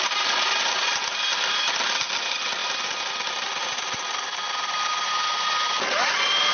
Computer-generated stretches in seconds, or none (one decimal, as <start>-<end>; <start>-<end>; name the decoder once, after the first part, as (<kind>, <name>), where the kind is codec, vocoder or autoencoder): none